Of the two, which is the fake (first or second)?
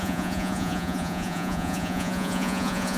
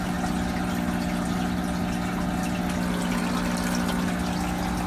first